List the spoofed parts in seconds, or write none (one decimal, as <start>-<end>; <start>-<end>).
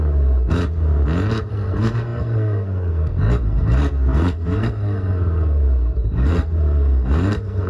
0.0-0.6; 1.5-7.7